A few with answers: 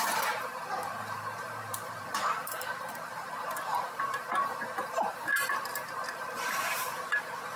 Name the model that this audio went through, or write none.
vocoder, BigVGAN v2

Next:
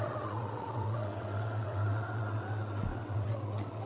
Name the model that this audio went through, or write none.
vocoder, WaveNeXt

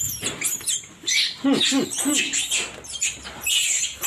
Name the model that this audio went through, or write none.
none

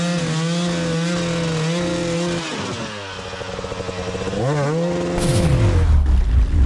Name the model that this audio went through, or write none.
none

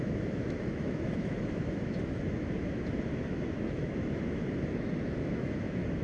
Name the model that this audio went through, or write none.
autoencoder, DAC-VAE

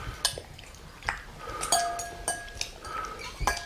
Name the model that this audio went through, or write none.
none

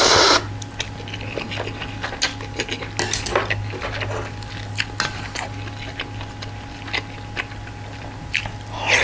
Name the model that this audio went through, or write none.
none